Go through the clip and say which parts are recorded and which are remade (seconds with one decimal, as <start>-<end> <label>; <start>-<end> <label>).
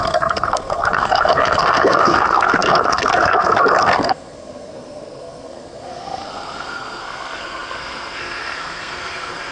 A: 0.0-9.5 remade